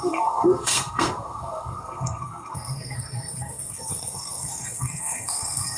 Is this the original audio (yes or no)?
no